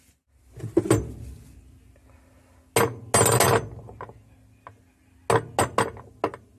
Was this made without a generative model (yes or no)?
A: yes